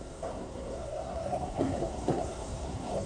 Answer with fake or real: fake